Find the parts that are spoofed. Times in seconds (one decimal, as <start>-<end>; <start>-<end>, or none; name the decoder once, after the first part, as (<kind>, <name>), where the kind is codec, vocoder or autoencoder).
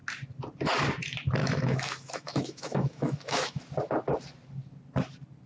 1.4-3.6 (autoencoder, DAC-VAE)